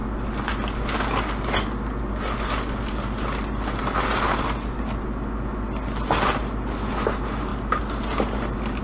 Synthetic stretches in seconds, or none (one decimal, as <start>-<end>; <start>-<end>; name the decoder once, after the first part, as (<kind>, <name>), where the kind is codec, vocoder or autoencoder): none